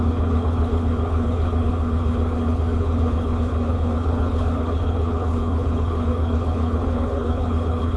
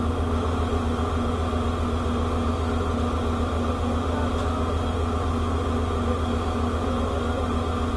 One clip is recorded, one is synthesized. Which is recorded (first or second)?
second